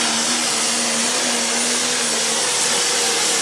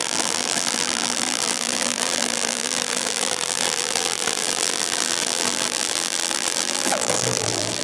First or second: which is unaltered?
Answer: first